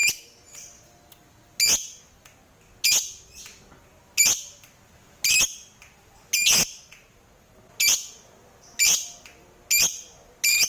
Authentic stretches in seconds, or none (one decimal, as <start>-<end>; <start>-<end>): 0.0-10.7